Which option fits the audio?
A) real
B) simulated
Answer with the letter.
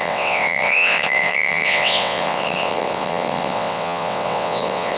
B